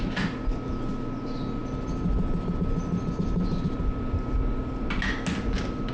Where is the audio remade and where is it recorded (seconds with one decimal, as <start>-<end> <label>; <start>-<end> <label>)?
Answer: 0.0-5.9 recorded